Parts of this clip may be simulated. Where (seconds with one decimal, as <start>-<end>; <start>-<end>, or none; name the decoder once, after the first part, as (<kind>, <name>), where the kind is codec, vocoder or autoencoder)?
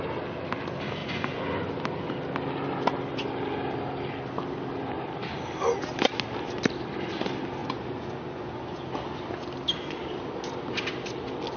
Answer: 1.0-1.7 (vocoder, Vocos); 7.6-8.8